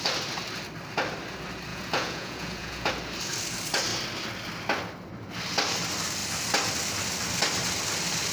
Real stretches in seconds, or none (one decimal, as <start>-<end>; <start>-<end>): 0.0-1.7; 2.9-8.3